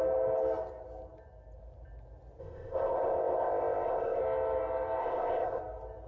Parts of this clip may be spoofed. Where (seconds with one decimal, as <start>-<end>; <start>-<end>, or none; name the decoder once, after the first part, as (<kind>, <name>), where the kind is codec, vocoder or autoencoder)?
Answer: 2.4-4.2 (codec, ZipCodec); 5.0-5.6